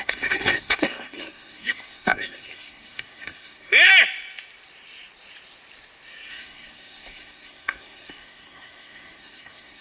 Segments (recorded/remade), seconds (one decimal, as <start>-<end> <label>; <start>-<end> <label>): 0.0-3.9 remade; 3.9-6.3 recorded; 6.3-9.8 remade